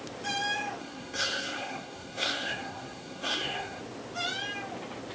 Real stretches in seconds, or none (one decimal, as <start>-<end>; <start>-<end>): 0.0-0.8; 3.8-5.1